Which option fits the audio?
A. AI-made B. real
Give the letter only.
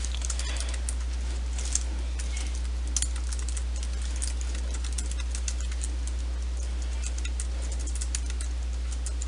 B